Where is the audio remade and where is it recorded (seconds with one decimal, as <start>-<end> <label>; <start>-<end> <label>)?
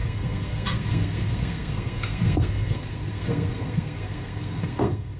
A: 0.0-5.2 remade